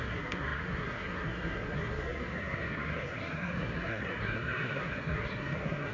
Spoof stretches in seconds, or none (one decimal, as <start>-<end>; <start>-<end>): 0.0-5.9